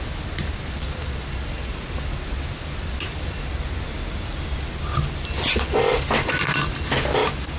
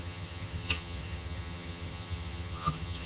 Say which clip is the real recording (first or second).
first